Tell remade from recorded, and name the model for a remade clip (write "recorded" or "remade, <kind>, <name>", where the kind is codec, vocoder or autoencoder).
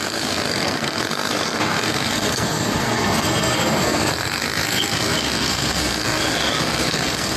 remade, codec, SNAC